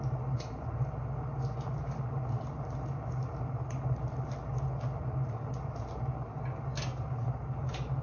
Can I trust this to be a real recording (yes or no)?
yes